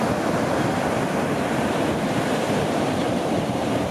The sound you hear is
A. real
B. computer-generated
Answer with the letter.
B